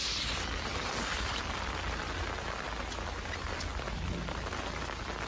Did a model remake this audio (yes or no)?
no